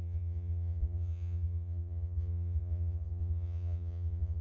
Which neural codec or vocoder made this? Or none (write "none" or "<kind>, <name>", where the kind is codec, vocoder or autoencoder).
vocoder, Vocos